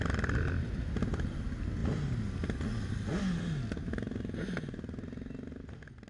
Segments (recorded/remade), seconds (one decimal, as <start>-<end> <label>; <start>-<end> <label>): 0.0-6.1 recorded